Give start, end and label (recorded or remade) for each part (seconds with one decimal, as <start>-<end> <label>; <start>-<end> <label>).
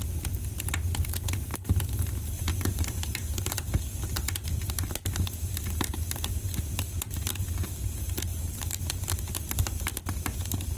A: 0.0-1.5 recorded; 1.5-3.4 remade; 3.4-8.3 recorded; 8.3-8.8 remade; 8.8-10.8 recorded